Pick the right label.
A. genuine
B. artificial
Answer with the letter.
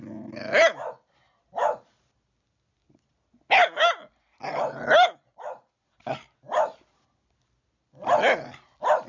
A